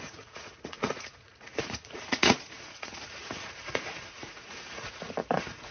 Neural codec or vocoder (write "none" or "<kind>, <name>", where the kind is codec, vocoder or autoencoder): vocoder, Vocos